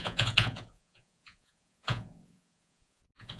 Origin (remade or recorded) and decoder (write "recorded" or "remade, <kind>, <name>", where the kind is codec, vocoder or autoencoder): remade, vocoder, Vocos